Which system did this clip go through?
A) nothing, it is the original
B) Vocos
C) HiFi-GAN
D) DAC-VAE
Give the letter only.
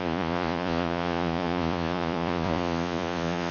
B